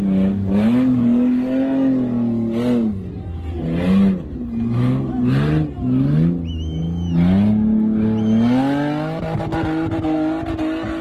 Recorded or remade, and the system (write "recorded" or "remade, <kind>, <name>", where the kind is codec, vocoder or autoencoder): recorded